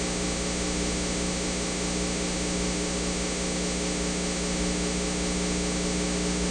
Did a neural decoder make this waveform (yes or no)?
yes